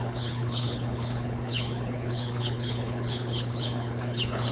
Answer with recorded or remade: remade